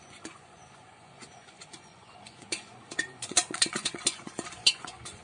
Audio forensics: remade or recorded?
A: remade